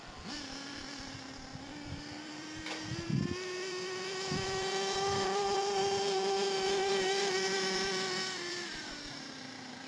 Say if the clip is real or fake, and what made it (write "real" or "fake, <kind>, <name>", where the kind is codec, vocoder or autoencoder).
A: fake, vocoder, BigVGAN v2